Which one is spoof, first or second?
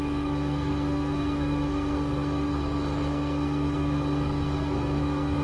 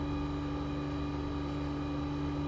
first